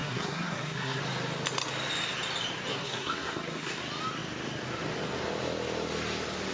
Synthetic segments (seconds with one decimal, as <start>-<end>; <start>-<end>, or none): 0.0-1.0; 2.7-3.8